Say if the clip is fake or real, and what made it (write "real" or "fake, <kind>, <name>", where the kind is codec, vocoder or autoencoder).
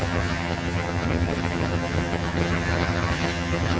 fake, vocoder, HiFi-GAN